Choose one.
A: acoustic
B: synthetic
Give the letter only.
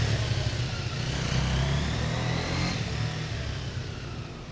A